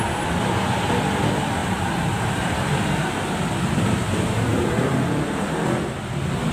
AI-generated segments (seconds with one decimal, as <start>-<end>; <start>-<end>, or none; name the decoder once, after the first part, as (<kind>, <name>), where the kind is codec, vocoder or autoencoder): 1.6-5.5 (vocoder, BigVGAN v2)